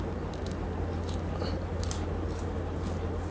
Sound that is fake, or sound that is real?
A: real